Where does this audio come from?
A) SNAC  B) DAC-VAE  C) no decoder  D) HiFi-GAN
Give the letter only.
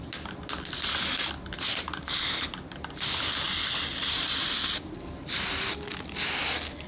C